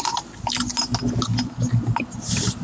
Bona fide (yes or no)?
yes